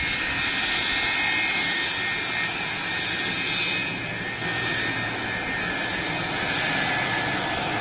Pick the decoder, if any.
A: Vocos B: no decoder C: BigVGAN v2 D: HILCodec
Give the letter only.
B